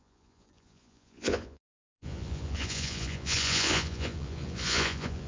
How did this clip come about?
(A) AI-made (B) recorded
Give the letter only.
A